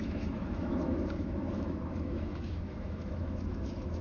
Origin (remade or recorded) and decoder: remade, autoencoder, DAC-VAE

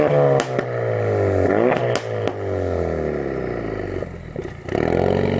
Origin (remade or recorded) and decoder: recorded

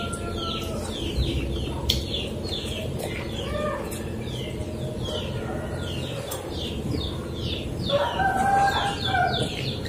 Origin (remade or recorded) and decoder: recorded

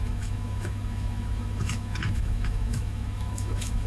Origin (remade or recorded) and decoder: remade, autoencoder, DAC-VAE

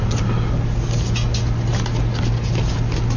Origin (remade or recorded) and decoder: recorded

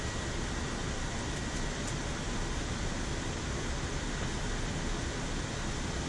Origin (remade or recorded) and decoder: recorded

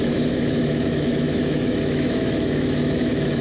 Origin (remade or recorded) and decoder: remade, autoencoder, DAC-VAE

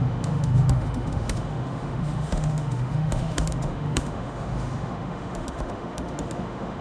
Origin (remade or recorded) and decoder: remade, autoencoder, DAC-VAE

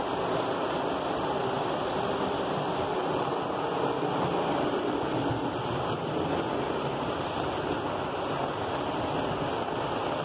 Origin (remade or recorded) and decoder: recorded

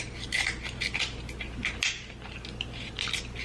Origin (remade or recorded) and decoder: recorded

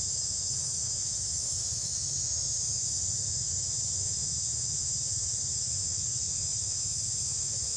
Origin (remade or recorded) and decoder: remade, autoencoder, DAC-VAE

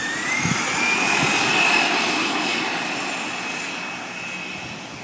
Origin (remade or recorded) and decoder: recorded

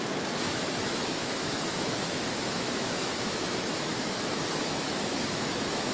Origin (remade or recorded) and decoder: remade, autoencoder, DAC-VAE